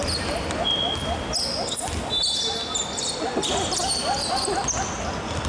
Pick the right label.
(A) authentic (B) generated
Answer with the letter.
A